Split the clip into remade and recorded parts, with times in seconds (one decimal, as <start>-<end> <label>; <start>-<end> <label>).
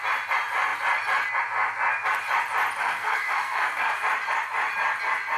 0.0-2.8 recorded; 2.8-4.0 remade; 4.0-5.4 recorded